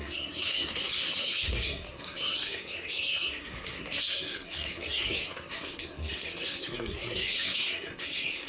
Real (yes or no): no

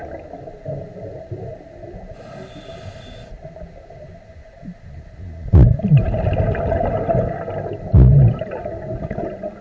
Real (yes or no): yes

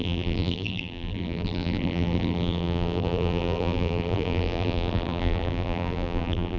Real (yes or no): no